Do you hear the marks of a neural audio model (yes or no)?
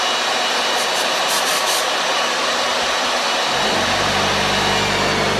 no